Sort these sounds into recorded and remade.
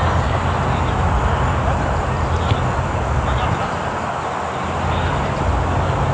recorded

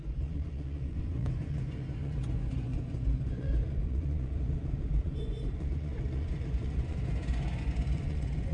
remade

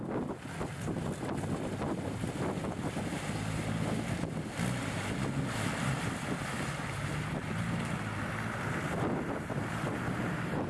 recorded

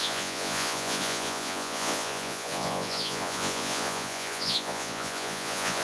remade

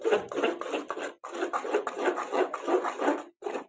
recorded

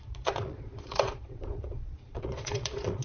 remade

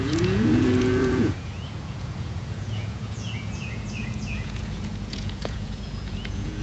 remade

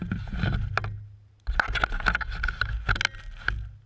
recorded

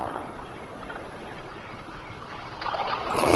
remade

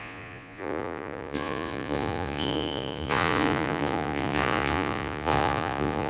remade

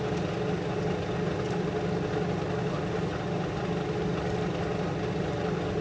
recorded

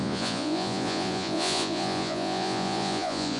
remade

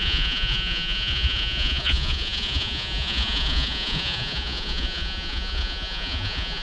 remade